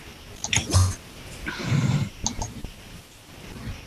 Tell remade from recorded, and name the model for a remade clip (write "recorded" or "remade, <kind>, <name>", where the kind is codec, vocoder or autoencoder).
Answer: recorded